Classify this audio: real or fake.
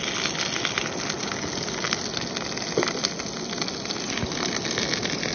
real